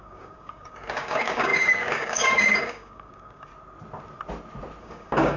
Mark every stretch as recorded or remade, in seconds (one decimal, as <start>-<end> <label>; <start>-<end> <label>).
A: 0.0-3.5 remade; 3.5-4.8 recorded; 4.8-5.4 remade